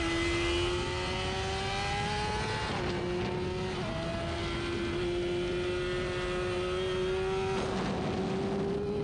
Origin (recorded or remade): recorded